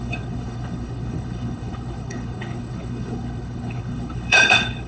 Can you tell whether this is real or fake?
fake